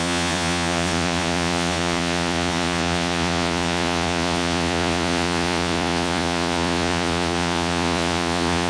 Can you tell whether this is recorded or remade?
remade